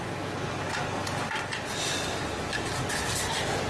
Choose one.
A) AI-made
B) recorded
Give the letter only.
B